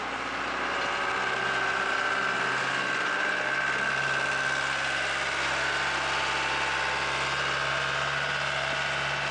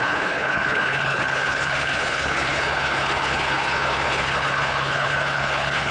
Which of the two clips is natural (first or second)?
first